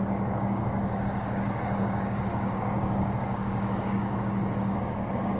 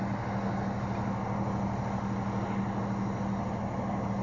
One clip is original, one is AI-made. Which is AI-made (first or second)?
first